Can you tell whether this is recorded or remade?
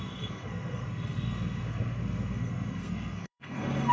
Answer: remade